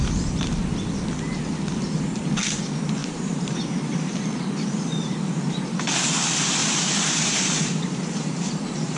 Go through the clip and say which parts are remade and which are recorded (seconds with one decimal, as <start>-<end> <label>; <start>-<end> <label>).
0.0-3.0 recorded; 3.0-3.6 remade; 3.6-6.6 recorded; 6.6-8.5 remade; 8.5-9.0 recorded